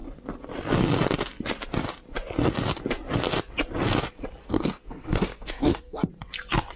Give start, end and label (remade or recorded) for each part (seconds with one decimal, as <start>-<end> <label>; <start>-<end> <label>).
0.0-4.4 recorded; 4.4-6.1 remade; 6.1-6.8 recorded

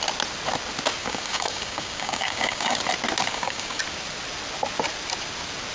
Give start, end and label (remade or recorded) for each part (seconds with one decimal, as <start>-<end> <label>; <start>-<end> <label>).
0.0-1.0 recorded; 1.0-2.8 remade; 2.8-3.3 recorded; 3.3-3.8 remade; 3.8-5.7 recorded

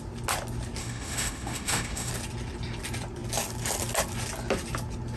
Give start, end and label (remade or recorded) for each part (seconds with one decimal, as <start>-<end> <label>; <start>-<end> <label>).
0.0-0.8 recorded; 0.8-2.1 remade; 2.1-5.2 recorded

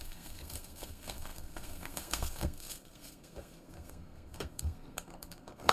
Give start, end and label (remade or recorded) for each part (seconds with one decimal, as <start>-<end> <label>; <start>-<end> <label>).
0.0-5.7 remade